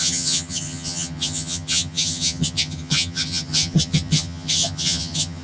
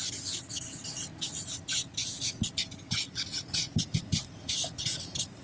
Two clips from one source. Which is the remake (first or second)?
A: first